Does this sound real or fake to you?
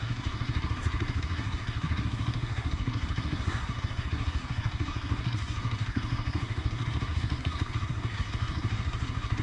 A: fake